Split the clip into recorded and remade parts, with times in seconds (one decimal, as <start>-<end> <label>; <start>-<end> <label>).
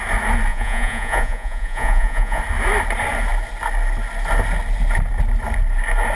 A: 0.0-0.5 recorded; 0.5-2.4 remade; 2.4-6.1 recorded